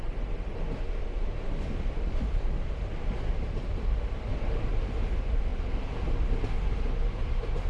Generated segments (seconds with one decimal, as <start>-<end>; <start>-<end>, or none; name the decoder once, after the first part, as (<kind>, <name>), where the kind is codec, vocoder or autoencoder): 0.0-5.5 (vocoder, BigVGAN v2); 6.4-7.7